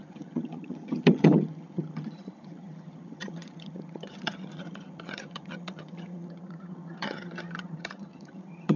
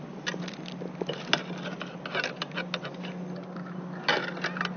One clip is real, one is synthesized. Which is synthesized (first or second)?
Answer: first